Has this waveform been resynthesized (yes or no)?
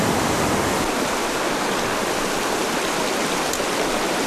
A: no